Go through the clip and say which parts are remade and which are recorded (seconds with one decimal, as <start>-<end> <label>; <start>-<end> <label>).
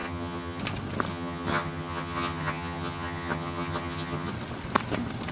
0.0-0.6 remade; 0.6-1.1 recorded; 1.1-4.3 remade; 4.3-5.3 recorded